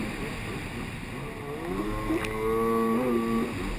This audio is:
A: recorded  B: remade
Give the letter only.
A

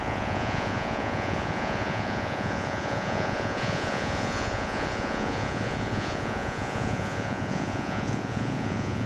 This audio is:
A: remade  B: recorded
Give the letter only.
A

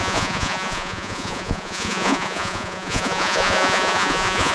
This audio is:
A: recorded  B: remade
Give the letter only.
B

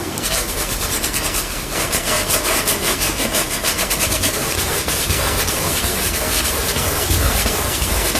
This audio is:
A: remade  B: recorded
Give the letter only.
A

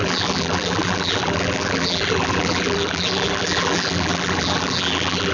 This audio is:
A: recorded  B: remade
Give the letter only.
B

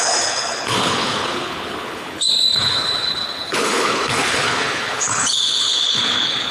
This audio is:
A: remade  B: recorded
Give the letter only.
A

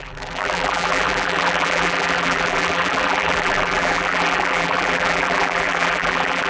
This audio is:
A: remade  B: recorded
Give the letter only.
A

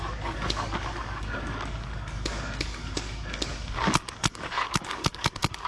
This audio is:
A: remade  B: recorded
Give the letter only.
A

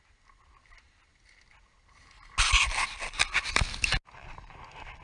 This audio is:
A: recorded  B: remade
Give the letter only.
A